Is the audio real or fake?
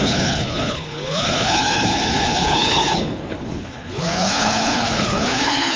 fake